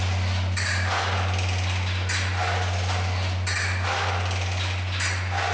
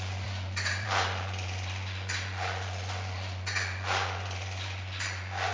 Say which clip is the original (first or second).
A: first